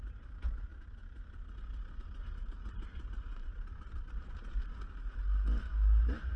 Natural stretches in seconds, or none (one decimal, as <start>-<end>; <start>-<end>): 0.7-2.2; 3.5-6.0